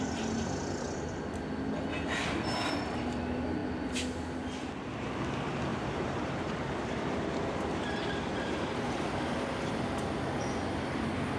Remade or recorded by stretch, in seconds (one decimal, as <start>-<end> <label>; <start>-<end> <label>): 0.0-5.7 recorded; 5.7-6.5 remade; 6.5-8.3 recorded; 8.3-9.1 remade; 9.1-11.4 recorded